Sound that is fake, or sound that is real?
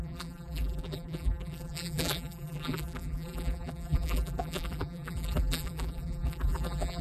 fake